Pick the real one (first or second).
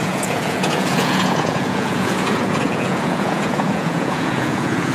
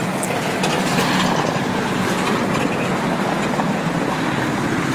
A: second